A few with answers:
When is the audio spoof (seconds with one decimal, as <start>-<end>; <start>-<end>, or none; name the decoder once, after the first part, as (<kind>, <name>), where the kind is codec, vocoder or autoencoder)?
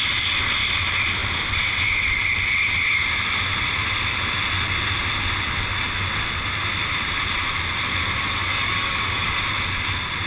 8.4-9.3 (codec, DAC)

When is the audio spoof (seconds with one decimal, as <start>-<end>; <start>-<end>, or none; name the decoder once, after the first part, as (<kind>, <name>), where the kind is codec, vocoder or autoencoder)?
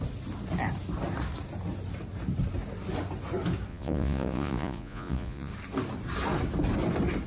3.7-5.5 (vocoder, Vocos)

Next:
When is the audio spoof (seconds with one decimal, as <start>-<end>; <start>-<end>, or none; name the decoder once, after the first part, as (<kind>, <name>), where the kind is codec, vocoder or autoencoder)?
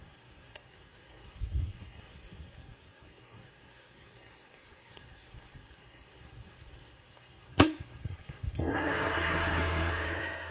0.0-10.5 (codec, SNAC)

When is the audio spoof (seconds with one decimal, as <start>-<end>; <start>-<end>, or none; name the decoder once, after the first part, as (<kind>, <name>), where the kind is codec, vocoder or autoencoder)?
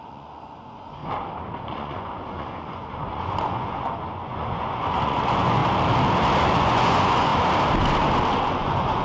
0.0-1.0 (vocoder, Vocos); 1.6-5.6; 6.4-7.3; 8.4-9.0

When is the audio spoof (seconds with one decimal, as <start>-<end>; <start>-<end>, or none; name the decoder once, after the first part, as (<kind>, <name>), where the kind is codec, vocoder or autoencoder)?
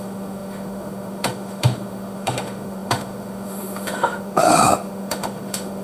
0.0-5.8 (autoencoder, DAC-VAE)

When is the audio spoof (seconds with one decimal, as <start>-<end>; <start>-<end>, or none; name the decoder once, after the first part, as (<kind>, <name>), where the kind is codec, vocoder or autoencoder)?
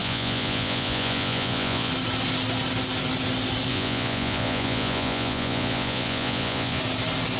0.0-1.9 (vocoder, Vocos); 3.7-6.8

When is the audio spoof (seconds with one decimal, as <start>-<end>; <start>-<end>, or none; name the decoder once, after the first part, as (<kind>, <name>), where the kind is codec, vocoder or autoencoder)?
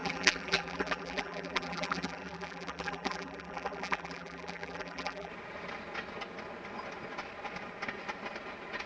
0.0-5.3 (vocoder, BigVGAN v2)